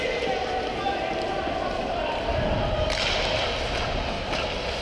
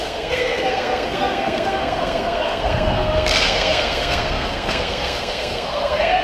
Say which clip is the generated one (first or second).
second